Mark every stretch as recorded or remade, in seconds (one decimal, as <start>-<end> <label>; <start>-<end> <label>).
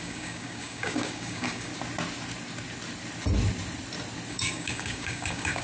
0.0-1.7 remade; 1.7-4.3 recorded; 4.3-5.6 remade